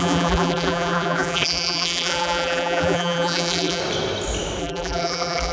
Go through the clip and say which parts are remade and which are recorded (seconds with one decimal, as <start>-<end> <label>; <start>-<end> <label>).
0.0-3.8 remade; 3.8-4.6 recorded; 4.6-5.5 remade

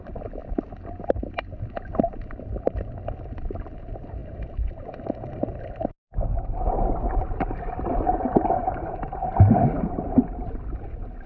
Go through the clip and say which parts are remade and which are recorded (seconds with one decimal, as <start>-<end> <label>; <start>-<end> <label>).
0.0-4.2 recorded; 4.2-5.4 remade; 5.4-11.3 recorded

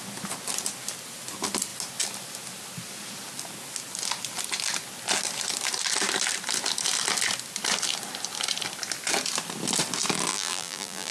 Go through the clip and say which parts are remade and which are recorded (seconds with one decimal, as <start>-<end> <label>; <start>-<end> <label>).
0.0-10.3 recorded; 10.3-11.1 remade

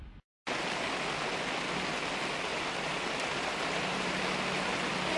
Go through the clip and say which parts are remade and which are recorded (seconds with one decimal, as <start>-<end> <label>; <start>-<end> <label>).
0.0-2.5 recorded; 2.5-4.2 remade; 4.2-5.2 recorded

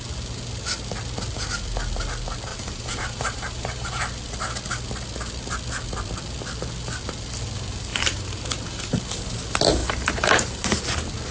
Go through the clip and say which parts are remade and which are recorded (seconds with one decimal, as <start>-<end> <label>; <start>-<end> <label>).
0.0-2.5 recorded; 2.5-4.0 remade; 4.0-7.9 recorded; 7.9-9.0 remade; 9.0-9.8 recorded; 9.8-10.8 remade; 10.8-11.3 recorded

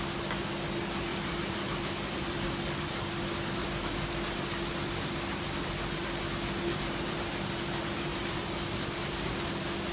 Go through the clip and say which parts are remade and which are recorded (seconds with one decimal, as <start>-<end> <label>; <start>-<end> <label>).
0.0-1.1 recorded; 1.1-3.1 remade; 3.1-8.1 recorded; 8.1-8.8 remade; 8.8-9.9 recorded

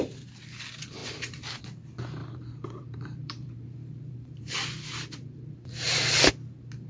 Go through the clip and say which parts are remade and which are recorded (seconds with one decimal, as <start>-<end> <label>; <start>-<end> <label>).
0.0-1.0 recorded; 1.0-1.6 remade; 1.6-2.2 recorded; 2.2-6.3 remade; 6.3-6.9 recorded

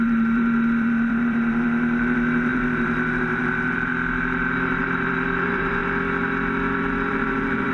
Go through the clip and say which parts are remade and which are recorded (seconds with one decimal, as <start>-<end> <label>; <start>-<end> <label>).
0.0-3.9 remade; 3.9-4.5 recorded; 4.5-5.8 remade; 5.8-7.1 recorded; 7.1-7.7 remade